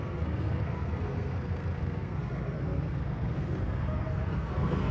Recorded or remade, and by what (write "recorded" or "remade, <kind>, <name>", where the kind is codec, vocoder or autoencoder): remade, codec, SNAC